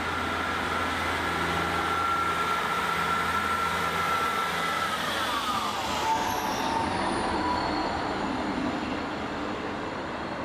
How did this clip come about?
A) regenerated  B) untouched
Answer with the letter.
B